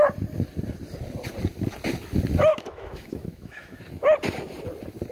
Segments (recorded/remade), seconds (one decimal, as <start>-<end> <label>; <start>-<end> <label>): 0.0-2.5 recorded; 2.5-3.8 remade; 3.8-5.1 recorded